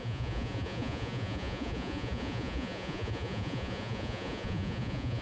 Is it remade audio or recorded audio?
remade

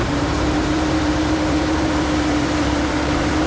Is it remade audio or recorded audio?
remade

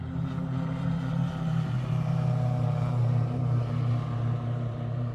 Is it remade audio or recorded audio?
remade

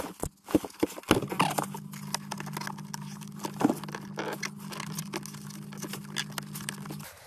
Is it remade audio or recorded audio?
recorded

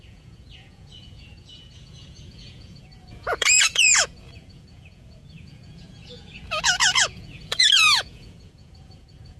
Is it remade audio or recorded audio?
remade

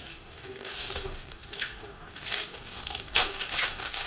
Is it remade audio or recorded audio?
remade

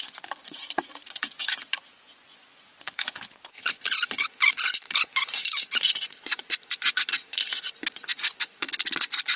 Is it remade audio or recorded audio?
remade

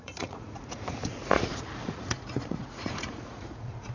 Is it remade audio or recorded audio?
remade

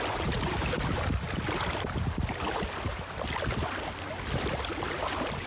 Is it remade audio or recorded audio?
recorded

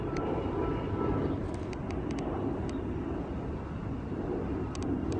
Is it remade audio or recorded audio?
recorded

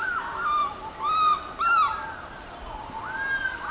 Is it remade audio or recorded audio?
recorded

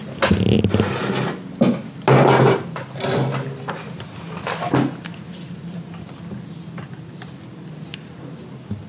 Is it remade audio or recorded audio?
recorded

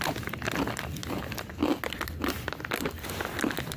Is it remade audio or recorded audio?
recorded